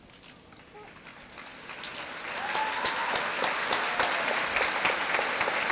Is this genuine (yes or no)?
yes